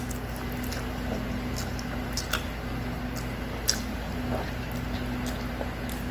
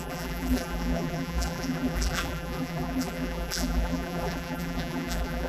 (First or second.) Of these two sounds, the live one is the first